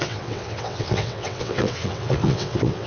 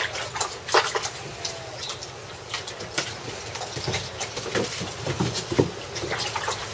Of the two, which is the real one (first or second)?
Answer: second